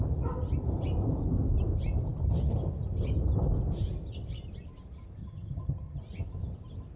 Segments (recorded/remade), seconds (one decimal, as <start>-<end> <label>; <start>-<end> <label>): 0.0-5.2 recorded; 5.2-6.0 remade; 6.0-7.0 recorded